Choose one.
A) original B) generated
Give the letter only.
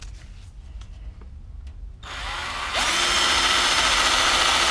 A